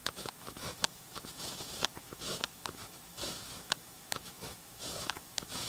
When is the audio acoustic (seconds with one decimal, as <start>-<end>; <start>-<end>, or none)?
none

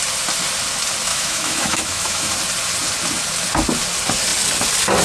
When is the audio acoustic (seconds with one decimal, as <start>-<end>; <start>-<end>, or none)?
0.0-1.1; 2.3-5.0

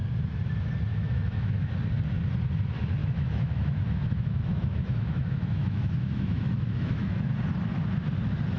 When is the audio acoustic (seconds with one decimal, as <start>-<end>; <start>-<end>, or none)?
0.0-0.9; 1.7-3.0; 7.3-8.6

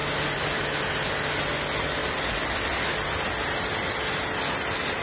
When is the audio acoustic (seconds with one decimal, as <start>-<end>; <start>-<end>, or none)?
0.0-5.0

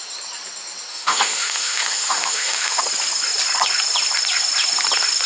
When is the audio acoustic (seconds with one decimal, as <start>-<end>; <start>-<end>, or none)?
0.0-0.9; 2.8-5.3

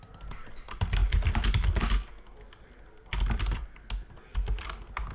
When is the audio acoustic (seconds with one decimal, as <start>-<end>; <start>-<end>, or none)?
0.0-5.1

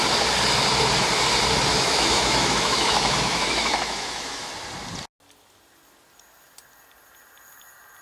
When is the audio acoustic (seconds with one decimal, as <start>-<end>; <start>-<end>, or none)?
0.0-1.7; 4.5-8.0